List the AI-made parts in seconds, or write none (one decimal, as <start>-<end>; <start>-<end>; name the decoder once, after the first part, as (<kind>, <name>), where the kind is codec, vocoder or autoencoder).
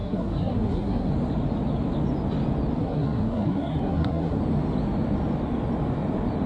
0.0-1.1 (codec, SNAC); 2.8-4.4